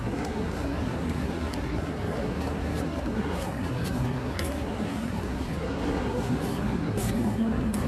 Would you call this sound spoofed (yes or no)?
yes